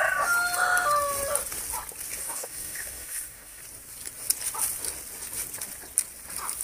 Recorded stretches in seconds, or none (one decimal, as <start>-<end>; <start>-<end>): 0.0-2.2; 3.6-6.6